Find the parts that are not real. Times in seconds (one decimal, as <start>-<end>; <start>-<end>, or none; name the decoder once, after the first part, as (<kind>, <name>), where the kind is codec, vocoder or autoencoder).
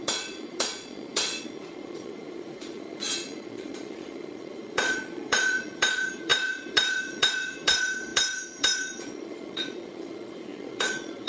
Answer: 0.0-11.3 (vocoder, Vocos)